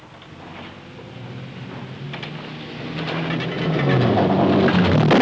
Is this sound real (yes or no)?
yes